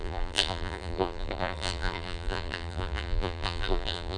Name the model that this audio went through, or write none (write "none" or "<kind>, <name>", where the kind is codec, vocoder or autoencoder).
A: vocoder, BigVGAN v2